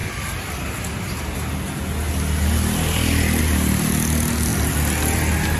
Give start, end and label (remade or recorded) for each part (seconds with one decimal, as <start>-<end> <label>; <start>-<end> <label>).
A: 0.0-5.6 recorded